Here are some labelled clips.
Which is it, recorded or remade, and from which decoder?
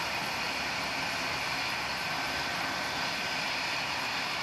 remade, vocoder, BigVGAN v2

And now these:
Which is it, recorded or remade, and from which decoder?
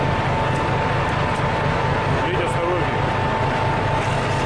recorded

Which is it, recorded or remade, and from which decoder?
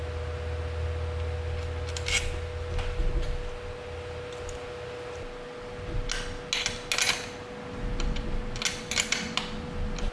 recorded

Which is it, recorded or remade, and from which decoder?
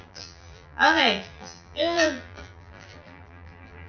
remade, vocoder, BigVGAN v2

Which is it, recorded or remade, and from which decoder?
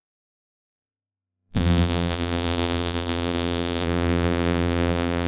remade, vocoder, BigVGAN v2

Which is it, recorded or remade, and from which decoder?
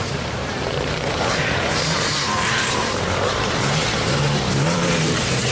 remade, vocoder, BigVGAN v2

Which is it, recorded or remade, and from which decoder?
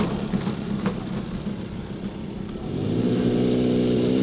recorded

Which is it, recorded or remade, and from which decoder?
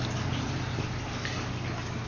recorded